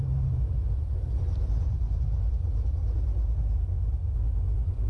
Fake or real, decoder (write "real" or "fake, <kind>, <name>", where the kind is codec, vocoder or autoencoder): real